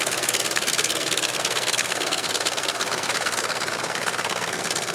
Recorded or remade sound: remade